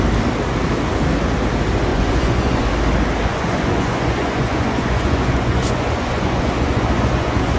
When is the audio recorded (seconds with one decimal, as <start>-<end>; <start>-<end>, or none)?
0.0-1.9; 2.7-3.3